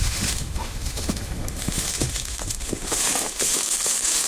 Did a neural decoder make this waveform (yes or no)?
yes